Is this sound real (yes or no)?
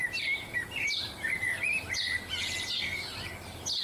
yes